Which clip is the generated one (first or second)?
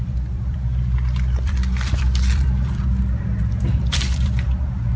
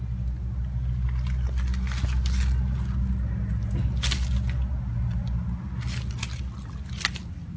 first